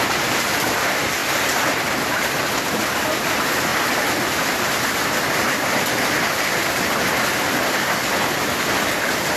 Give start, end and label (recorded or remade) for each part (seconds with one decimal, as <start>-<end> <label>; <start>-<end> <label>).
0.0-1.2 remade; 1.2-2.0 recorded; 2.0-9.4 remade